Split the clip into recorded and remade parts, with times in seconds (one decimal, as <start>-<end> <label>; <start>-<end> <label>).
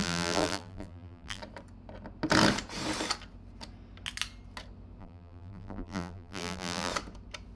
0.0-1.4 remade; 1.4-5.0 recorded; 5.0-6.9 remade; 6.9-7.6 recorded